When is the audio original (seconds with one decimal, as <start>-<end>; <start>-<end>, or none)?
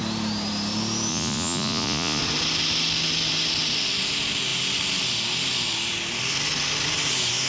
0.0-1.1; 2.2-7.5